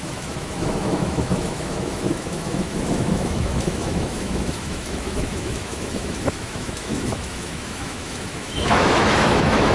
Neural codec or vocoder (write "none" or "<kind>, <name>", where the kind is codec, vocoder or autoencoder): autoencoder, DAC-VAE